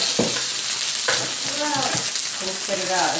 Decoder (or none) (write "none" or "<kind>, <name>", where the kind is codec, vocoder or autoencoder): none